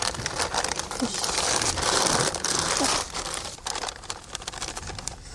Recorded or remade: remade